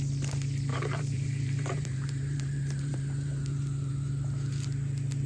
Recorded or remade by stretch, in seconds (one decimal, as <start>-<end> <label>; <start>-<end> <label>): 0.0-0.7 recorded; 0.7-3.9 remade; 3.9-5.3 recorded